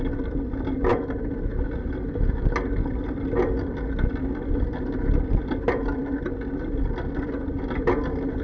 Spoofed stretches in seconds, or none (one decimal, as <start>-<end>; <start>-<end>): none